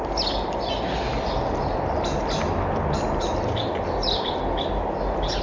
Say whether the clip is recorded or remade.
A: recorded